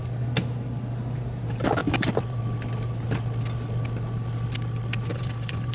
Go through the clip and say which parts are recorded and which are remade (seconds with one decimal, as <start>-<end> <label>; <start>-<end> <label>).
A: 0.0-1.8 recorded; 1.8-2.4 remade; 2.4-5.1 recorded; 5.1-5.7 remade